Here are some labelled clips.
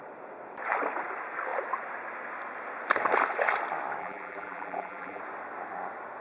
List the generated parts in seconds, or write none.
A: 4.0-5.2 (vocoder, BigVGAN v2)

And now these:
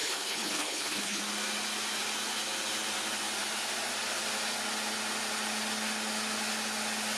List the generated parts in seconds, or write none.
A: 0.0-1.2 (codec, HILCodec)

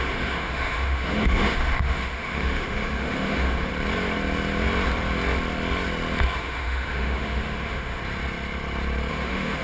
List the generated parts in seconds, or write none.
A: 0.0-3.7 (autoencoder, DAC-VAE); 6.4-8.0; 9.1-9.6

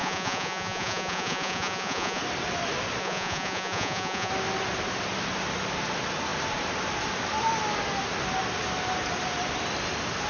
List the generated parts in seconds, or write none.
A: 0.0-2.2 (vocoder, Vocos); 3.0-4.3

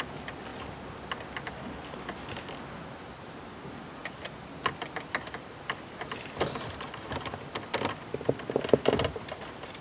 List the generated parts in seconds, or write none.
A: 4.0-8.3 (vocoder, BigVGAN v2)